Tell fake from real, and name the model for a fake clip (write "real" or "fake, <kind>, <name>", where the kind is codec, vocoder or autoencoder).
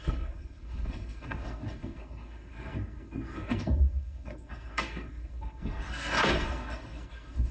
fake, codec, SNAC